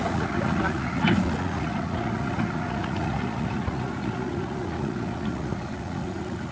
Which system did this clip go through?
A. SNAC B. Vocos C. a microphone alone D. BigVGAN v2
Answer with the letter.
B